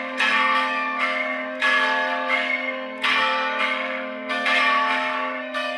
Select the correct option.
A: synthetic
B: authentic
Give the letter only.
A